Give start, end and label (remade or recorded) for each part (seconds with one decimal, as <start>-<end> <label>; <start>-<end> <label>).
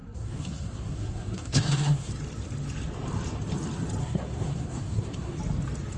0.0-2.1 remade; 2.1-4.0 recorded; 4.0-5.4 remade; 5.4-6.0 recorded